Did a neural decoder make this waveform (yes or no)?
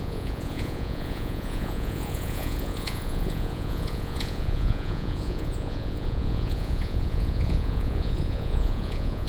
yes